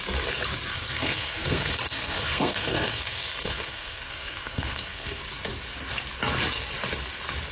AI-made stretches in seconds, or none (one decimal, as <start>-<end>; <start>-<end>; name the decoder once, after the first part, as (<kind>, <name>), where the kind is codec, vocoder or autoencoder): 0.7-5.2 (codec, SNAC)